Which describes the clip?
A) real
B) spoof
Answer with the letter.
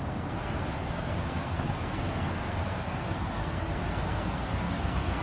B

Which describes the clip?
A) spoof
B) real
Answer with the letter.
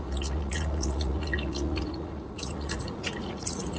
A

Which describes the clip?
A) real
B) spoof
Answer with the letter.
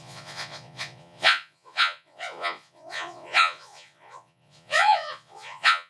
B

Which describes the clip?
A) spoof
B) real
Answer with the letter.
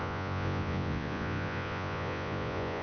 A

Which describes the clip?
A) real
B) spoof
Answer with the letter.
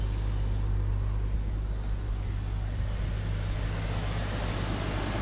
A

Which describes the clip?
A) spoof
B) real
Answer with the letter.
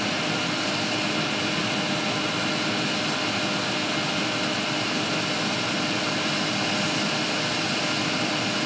B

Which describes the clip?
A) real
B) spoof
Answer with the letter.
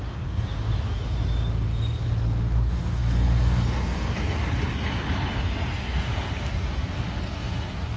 A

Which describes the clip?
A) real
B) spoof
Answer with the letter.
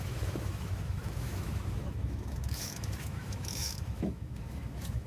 B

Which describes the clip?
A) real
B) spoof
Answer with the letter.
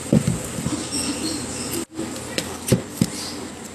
A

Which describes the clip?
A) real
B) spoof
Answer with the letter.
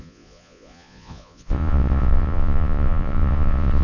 B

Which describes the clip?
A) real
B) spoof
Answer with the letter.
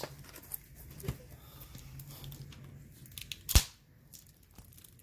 A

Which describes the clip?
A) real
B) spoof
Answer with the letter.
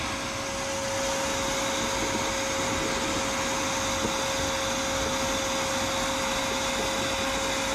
A